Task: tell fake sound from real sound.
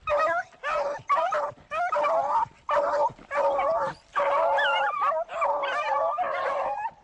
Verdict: real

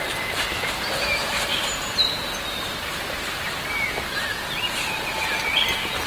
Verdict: real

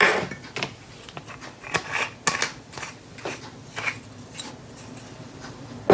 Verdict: real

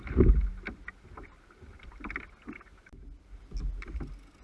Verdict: real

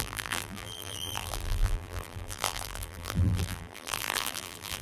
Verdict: fake